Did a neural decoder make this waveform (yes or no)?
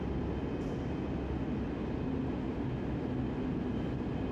no